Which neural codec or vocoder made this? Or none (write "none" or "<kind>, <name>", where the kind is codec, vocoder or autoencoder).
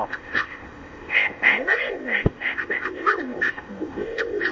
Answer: codec, ZipCodec